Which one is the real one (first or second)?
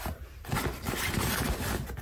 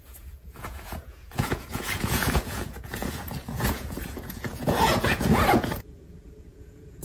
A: first